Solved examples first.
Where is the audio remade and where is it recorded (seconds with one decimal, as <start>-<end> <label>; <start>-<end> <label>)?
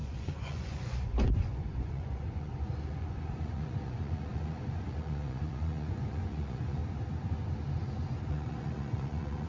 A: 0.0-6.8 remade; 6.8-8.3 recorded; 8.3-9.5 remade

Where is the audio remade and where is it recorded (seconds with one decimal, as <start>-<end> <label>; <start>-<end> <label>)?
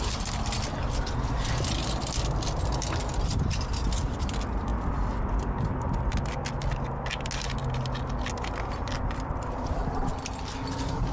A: 0.0-11.1 recorded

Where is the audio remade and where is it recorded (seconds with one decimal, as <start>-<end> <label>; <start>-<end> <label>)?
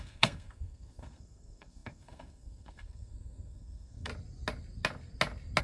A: 0.0-4.1 remade; 4.1-5.6 recorded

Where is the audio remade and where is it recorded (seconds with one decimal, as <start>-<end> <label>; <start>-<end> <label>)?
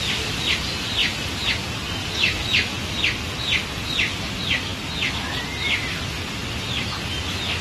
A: 0.0-1.0 recorded; 1.0-1.5 remade; 1.5-2.0 recorded; 2.0-3.0 remade; 3.0-7.6 recorded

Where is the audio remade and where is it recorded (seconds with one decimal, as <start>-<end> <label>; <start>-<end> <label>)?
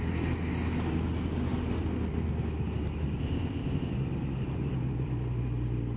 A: 0.0-3.2 recorded; 3.2-3.9 remade; 3.9-6.0 recorded